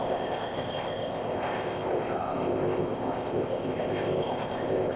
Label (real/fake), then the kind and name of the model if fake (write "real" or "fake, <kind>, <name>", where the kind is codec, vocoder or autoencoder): fake, codec, ZipCodec